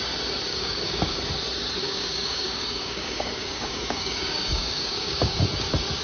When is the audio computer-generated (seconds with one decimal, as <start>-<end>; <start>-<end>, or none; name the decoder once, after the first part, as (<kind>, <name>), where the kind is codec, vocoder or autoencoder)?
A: 0.5-1.2 (codec, DAC); 1.8-5.4